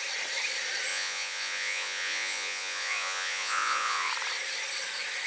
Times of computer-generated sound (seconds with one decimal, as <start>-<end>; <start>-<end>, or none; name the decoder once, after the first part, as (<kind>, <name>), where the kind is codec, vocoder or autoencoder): 0.9-4.1 (vocoder, Vocos)